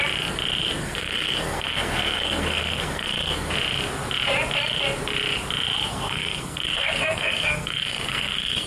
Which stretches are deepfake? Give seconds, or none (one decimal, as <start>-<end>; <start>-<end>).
0.8-3.5; 5.9-8.7